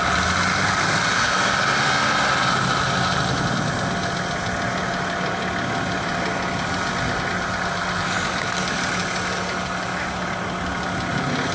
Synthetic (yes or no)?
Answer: no